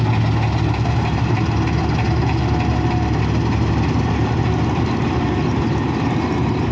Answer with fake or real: real